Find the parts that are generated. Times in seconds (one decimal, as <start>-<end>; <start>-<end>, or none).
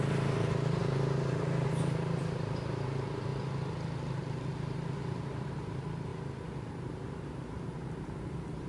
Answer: 0.0-0.8; 1.3-3.3; 4.2-6.1; 6.7-8.7